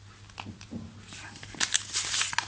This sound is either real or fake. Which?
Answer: real